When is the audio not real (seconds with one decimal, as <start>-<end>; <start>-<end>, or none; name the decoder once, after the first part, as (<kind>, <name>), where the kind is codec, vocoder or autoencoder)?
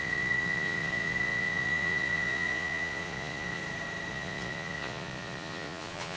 0.0-3.6 (vocoder, Vocos); 4.1-6.2